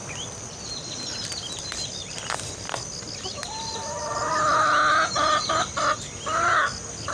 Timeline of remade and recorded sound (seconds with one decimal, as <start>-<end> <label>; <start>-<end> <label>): 0.0-0.7 remade; 0.7-7.1 recorded